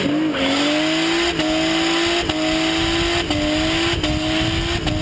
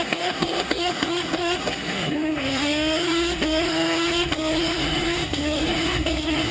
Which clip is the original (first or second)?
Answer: first